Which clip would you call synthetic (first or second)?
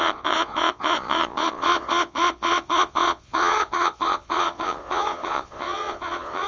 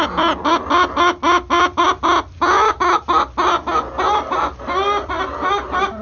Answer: first